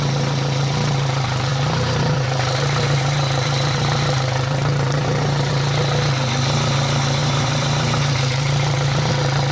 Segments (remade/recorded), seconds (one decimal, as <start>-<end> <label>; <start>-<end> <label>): 0.0-1.5 recorded; 1.5-5.5 remade; 5.5-7.2 recorded; 7.2-9.1 remade; 9.1-9.5 recorded